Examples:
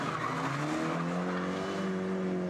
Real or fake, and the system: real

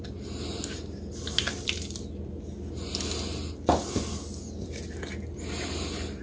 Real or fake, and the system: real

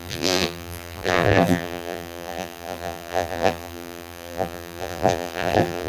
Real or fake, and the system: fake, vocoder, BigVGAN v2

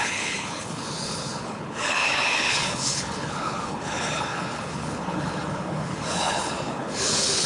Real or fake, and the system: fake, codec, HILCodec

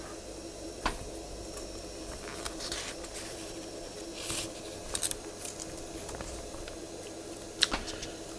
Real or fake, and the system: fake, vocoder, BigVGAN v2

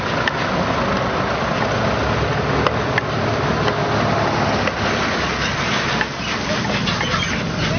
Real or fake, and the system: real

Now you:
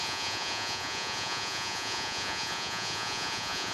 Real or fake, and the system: fake, vocoder, Vocos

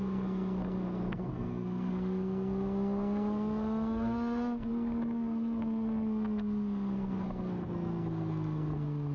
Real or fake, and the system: fake, codec, SNAC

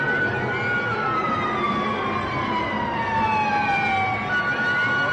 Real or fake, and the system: real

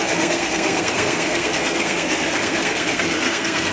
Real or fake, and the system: fake, codec, SNAC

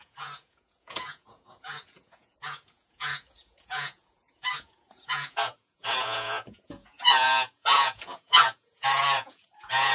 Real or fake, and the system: fake, vocoder, Vocos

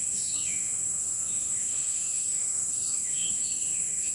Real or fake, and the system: fake, autoencoder, DAC-VAE